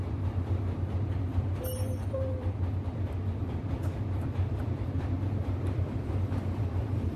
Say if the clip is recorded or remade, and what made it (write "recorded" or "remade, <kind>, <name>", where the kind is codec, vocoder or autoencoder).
remade, vocoder, BigVGAN v2